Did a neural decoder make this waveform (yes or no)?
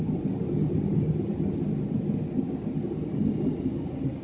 no